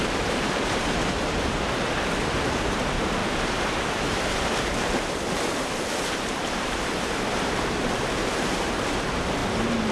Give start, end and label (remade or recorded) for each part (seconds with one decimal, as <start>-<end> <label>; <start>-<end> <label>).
0.0-9.4 remade; 9.4-9.9 recorded